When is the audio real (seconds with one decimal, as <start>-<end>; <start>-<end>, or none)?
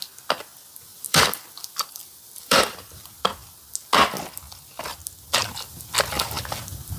0.0-0.9; 3.2-7.0